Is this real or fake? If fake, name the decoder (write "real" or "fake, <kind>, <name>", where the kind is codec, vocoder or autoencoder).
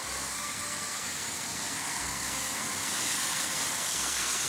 fake, codec, SNAC